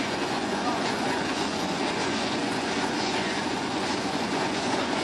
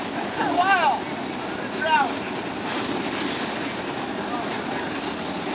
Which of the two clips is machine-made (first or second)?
first